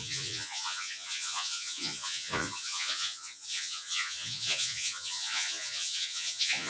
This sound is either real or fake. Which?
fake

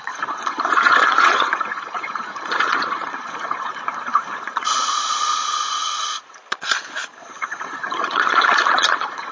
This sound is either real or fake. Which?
fake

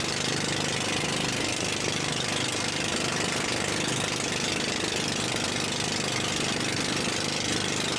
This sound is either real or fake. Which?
real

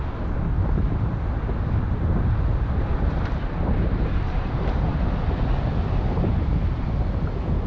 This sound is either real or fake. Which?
real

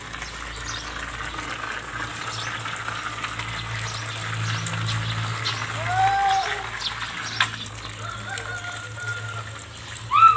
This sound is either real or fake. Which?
real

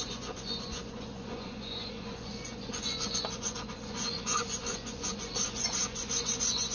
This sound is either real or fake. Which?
fake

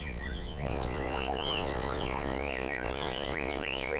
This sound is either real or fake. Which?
fake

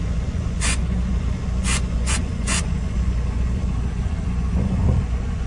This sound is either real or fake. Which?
fake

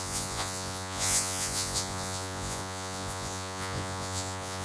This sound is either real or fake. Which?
fake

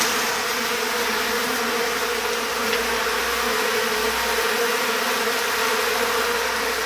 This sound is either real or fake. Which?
real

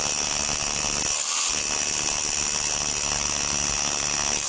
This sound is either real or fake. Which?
real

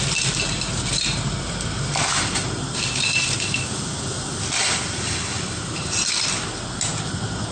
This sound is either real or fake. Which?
real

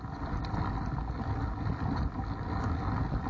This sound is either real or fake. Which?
real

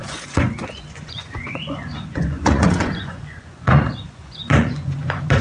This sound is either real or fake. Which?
fake